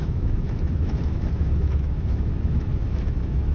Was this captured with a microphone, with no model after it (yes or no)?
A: no